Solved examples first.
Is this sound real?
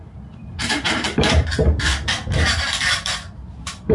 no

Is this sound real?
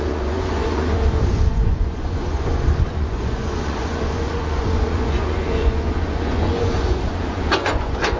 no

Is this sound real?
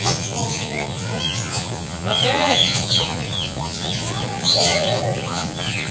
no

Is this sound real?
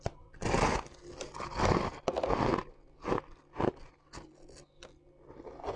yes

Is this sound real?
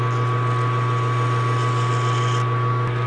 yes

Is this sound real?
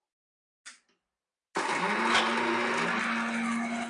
yes